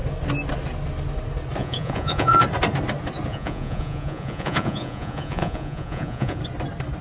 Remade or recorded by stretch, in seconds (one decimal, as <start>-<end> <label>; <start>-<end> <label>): 0.0-1.6 recorded; 1.6-2.4 remade; 2.4-3.3 recorded; 3.3-6.4 remade; 6.4-7.0 recorded